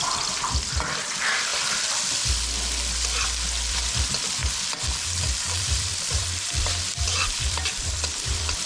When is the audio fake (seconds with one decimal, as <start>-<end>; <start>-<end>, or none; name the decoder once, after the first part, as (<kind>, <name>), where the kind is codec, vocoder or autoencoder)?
0.0-1.5 (vocoder, BigVGAN v2); 3.7-4.4; 5.2-8.7